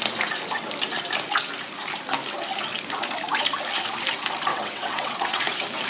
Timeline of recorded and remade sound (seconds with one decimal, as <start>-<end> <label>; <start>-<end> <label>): 0.0-4.5 recorded; 4.5-5.4 remade; 5.4-5.9 recorded